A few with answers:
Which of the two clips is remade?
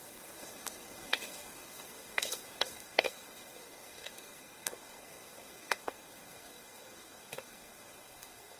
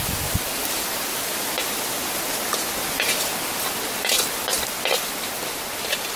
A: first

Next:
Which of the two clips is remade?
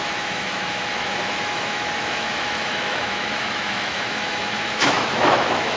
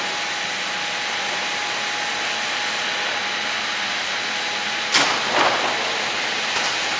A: first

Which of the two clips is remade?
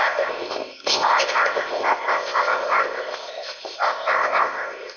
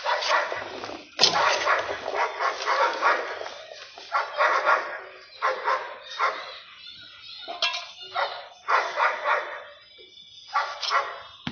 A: first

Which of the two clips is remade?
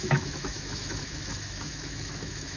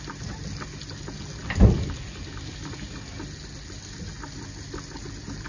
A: first